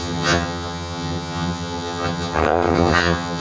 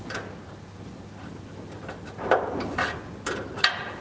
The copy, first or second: first